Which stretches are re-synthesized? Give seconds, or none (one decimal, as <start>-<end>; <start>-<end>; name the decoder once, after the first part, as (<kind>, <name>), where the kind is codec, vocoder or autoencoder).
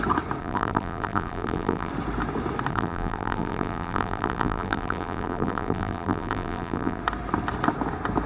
0.4-1.9 (vocoder, BigVGAN v2); 2.7-7.0